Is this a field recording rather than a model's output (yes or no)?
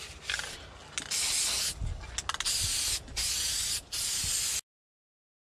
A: yes